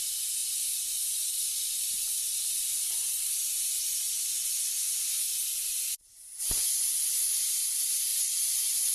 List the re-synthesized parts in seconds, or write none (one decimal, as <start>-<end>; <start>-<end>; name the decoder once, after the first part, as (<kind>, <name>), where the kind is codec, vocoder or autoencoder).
0.4-3.7 (vocoder, BigVGAN v2); 8.1-8.9